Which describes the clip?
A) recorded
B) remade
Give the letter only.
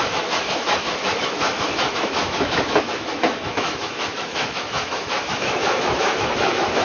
B